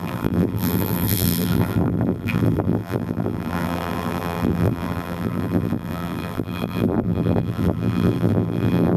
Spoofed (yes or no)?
yes